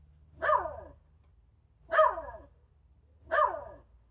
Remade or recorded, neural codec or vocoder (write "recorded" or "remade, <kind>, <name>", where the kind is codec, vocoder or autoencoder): recorded